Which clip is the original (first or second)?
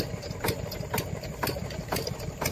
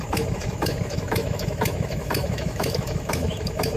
first